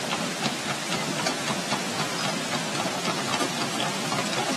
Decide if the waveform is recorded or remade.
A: recorded